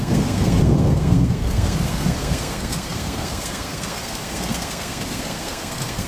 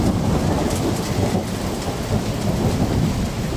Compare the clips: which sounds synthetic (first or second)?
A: first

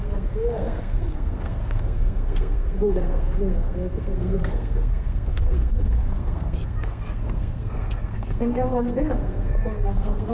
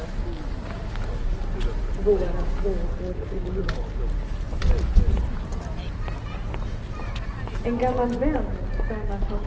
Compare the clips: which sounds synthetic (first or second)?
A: first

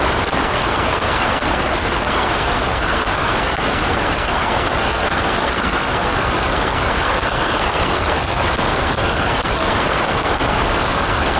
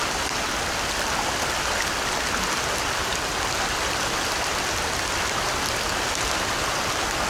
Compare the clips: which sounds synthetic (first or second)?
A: first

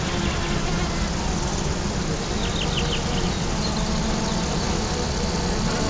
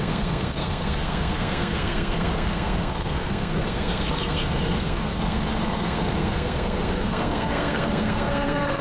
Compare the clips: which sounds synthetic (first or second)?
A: second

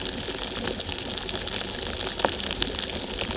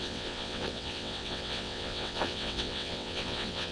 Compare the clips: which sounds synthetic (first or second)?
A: second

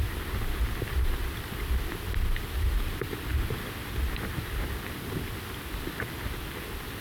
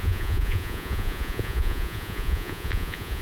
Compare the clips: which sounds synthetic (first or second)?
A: second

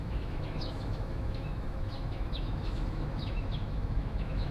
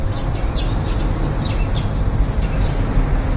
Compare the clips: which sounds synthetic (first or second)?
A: first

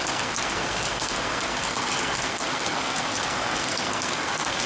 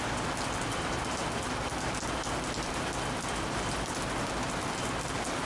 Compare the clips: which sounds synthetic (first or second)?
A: first